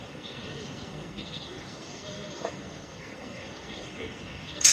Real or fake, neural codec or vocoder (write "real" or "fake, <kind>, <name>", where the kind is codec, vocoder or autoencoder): fake, codec, SNAC